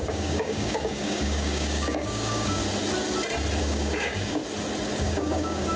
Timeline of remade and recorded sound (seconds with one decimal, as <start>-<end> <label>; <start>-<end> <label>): 0.0-2.6 remade; 2.6-3.6 recorded; 3.6-4.4 remade; 4.4-5.0 recorded; 5.0-5.8 remade